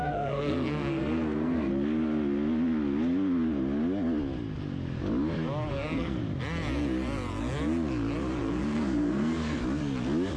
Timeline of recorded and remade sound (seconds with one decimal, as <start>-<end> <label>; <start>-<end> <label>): 0.0-1.7 remade; 1.7-5.7 recorded; 5.7-6.2 remade; 6.2-8.4 recorded; 8.4-9.6 remade; 9.6-10.4 recorded